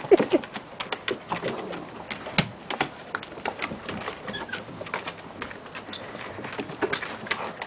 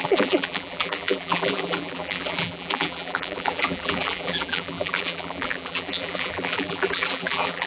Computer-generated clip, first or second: second